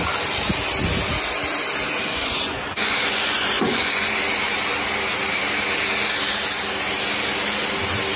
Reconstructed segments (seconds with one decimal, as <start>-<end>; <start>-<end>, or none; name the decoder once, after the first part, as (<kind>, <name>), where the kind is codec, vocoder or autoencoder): 2.1-4.2 (vocoder, Vocos)